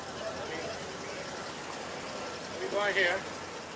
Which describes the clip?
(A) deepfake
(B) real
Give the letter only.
B